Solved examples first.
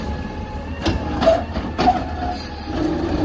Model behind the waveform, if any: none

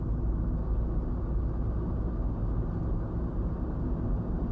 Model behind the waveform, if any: none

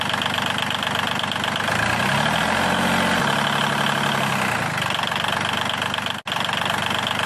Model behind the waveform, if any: none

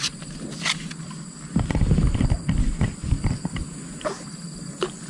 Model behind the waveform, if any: none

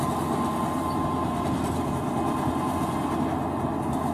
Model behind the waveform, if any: none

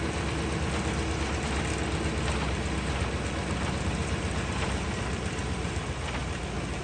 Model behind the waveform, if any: none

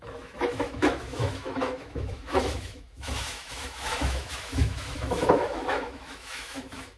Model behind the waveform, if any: autoencoder, DAC-VAE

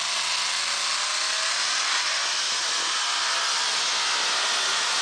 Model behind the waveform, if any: none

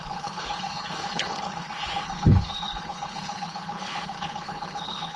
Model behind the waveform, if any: codec, HILCodec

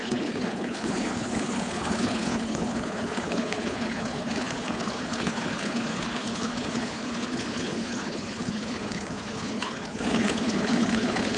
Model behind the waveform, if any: codec, HILCodec